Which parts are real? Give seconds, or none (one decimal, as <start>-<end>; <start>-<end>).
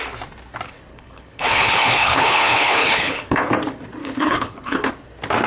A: 0.0-0.9; 3.5-4.0; 4.9-5.5